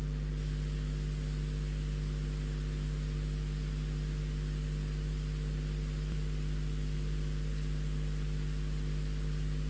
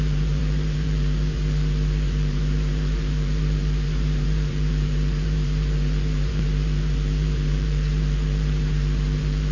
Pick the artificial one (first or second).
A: second